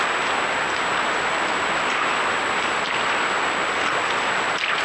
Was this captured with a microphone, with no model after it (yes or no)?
yes